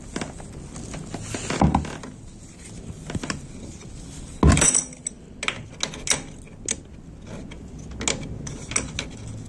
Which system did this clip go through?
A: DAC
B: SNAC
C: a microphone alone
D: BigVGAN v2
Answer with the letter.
C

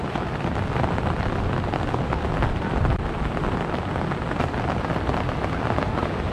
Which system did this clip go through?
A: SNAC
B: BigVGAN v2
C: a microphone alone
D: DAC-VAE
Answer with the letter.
C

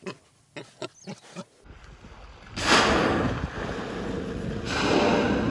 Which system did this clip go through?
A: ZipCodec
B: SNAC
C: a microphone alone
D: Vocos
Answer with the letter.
C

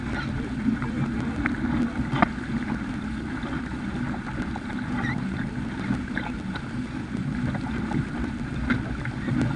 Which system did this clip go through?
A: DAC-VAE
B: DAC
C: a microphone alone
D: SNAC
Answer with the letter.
C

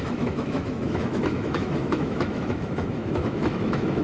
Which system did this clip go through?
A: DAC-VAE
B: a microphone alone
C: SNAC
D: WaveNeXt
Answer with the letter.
A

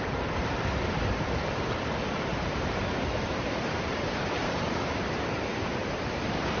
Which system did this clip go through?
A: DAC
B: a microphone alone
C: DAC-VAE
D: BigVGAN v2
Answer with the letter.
D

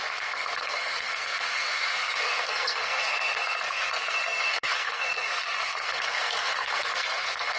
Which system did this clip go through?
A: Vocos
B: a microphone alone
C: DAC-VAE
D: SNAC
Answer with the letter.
D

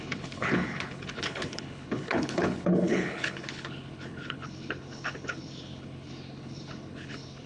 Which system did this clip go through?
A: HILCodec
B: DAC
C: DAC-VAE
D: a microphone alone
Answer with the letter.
A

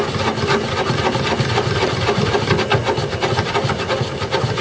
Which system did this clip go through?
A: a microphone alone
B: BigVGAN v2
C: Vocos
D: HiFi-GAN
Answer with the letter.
A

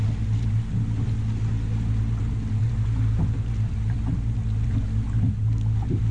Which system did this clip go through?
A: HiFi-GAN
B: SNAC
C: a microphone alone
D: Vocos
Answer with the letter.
C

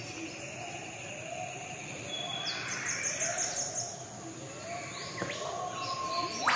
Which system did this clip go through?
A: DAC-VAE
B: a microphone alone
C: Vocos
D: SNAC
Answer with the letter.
B